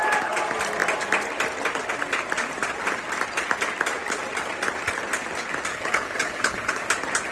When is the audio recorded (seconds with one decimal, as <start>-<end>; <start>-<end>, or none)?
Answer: 0.0-5.7; 6.8-7.3